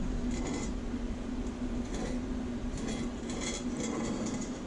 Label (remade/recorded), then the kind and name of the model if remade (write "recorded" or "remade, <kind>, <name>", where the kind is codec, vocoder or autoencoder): recorded